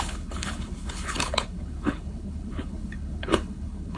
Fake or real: fake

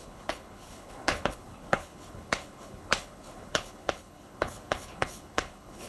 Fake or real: fake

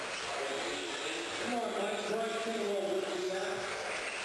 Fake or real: real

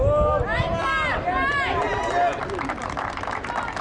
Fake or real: real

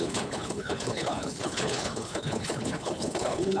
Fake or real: fake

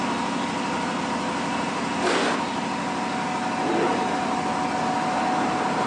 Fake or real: real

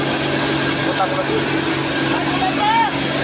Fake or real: real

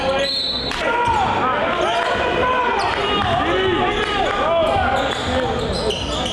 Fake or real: real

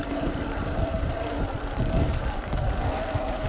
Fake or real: real